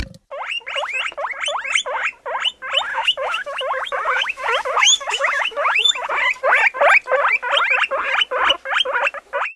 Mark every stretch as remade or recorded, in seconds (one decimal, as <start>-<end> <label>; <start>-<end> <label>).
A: 0.0-2.9 recorded; 2.9-6.1 remade; 6.1-9.6 recorded